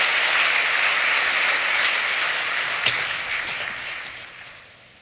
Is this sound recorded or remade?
recorded